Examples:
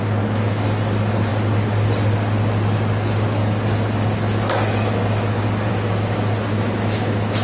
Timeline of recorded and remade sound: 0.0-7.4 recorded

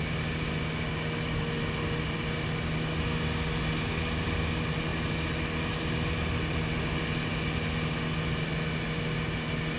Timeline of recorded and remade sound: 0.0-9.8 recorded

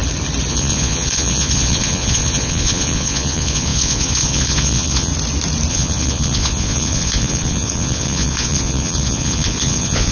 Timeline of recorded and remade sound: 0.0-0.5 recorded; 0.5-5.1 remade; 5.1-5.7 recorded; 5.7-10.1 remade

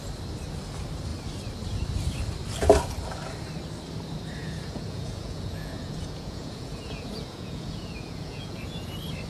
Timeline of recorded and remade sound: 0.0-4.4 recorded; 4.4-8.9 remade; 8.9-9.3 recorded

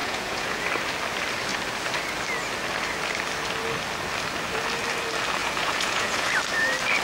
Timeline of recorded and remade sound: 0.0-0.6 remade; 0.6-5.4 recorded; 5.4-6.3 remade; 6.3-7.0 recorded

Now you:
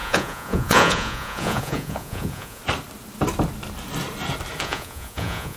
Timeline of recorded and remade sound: 0.0-2.6 remade; 2.6-4.6 recorded; 4.6-5.6 remade

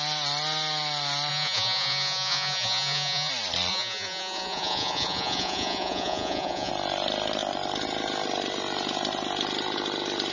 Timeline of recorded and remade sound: 0.0-1.3 recorded; 1.3-3.3 remade; 3.3-3.7 recorded; 3.7-6.7 remade; 6.7-10.3 recorded